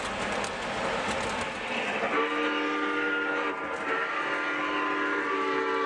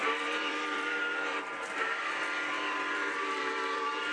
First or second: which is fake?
second